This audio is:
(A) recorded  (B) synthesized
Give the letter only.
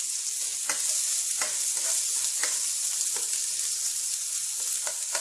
A